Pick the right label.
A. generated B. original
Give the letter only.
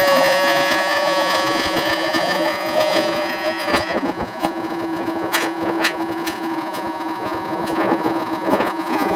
A